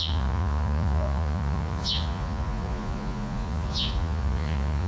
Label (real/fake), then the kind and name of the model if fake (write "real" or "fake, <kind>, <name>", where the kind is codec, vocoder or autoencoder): fake, vocoder, Vocos